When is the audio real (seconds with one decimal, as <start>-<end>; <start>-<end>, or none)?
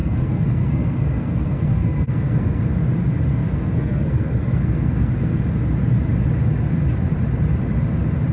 2.6-3.3; 5.4-8.3